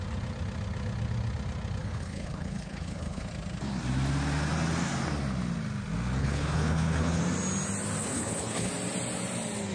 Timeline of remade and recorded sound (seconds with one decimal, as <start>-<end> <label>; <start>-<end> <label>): 0.0-1.8 recorded; 1.8-3.3 remade; 3.3-6.2 recorded; 6.2-7.2 remade; 7.2-8.0 recorded; 8.0-8.7 remade; 8.7-9.7 recorded